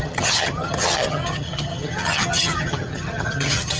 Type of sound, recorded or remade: remade